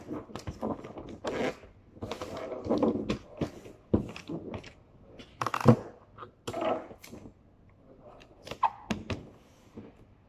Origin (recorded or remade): recorded